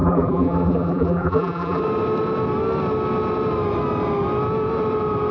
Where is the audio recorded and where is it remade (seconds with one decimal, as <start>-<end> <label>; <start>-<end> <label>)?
0.0-1.8 remade; 1.8-5.3 recorded